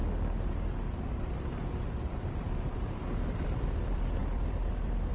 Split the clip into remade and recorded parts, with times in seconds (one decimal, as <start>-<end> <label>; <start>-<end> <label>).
0.0-1.2 recorded; 1.2-5.1 remade